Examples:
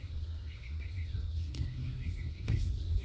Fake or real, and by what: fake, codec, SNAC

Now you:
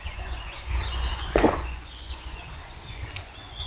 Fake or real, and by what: fake, vocoder, Vocos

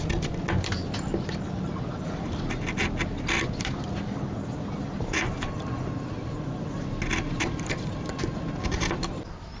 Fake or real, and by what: real